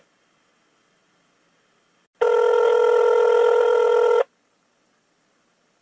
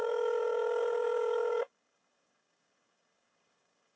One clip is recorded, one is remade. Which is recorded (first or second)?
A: first